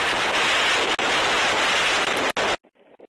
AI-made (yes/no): no